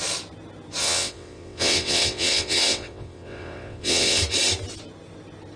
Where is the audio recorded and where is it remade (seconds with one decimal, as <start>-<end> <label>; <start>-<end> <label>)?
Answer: 0.0-0.8 recorded; 0.8-4.2 remade; 4.2-5.6 recorded